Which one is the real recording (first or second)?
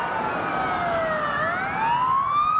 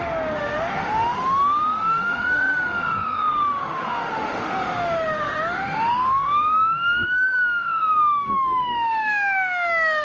first